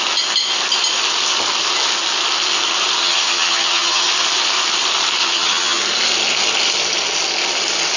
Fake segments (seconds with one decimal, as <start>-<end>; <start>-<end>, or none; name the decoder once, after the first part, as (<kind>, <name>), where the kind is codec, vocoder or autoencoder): 3.0-4.1 (vocoder, HiFi-GAN); 5.2-5.8